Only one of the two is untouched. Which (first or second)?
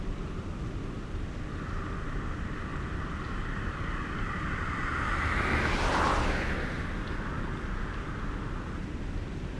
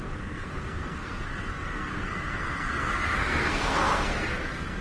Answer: first